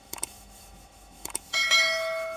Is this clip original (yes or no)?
no